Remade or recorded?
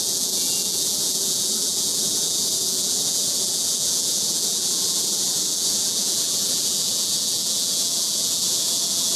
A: remade